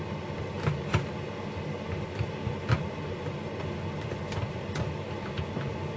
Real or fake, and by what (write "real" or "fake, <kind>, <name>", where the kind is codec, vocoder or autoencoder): real